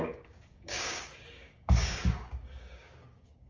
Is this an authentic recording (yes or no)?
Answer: no